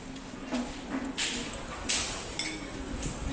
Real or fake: real